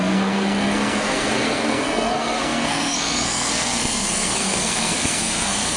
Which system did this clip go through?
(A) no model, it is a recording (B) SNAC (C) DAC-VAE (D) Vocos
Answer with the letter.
B